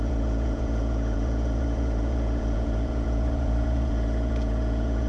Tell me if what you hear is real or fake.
fake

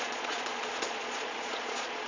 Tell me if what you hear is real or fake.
fake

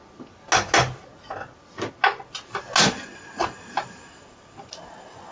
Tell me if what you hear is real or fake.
real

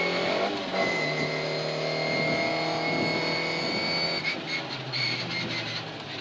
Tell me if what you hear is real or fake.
real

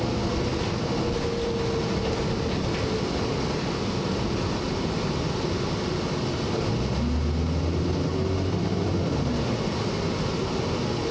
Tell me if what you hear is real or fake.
real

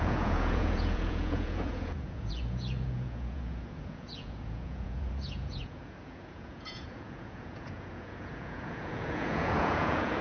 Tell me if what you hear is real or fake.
fake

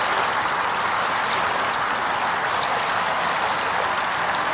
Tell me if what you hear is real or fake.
real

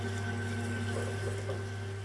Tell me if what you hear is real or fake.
real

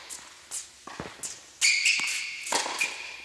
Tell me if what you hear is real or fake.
real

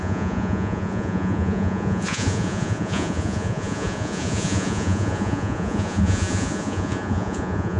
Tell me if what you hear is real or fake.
fake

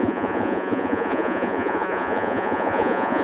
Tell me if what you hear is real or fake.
fake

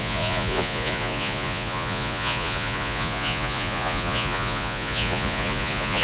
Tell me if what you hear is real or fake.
fake